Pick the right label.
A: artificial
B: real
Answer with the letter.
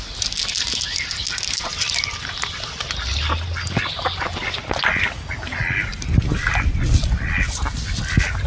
B